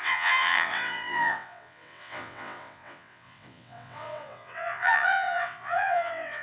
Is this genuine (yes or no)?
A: no